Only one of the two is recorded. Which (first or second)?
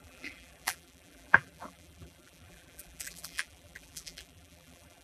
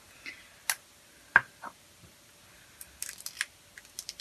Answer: second